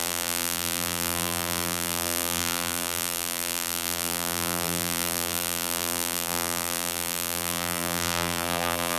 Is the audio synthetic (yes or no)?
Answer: yes